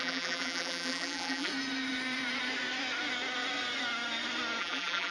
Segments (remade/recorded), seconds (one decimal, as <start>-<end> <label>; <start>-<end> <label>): 0.0-1.5 remade; 1.5-4.6 recorded; 4.6-5.1 remade